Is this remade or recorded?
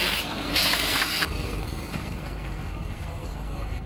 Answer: remade